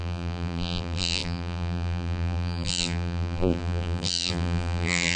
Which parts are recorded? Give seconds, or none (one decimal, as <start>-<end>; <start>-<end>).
none